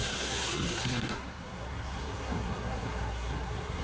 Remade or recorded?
remade